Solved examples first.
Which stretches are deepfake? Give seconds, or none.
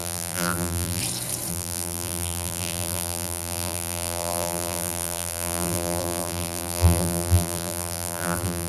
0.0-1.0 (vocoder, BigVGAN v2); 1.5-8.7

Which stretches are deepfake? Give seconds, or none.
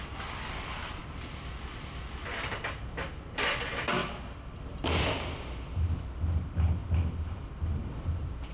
none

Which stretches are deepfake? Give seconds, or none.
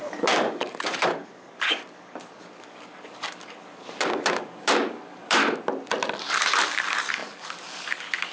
0.0-5.4 (codec, DAC); 6.2-8.3